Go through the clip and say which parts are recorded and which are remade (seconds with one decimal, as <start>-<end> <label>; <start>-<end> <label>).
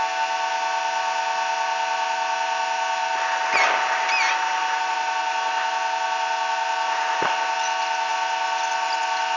0.0-9.4 recorded